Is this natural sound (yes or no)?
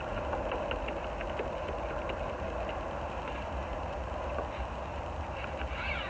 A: yes